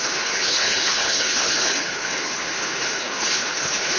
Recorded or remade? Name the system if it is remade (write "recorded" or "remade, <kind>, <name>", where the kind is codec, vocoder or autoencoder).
remade, codec, HILCodec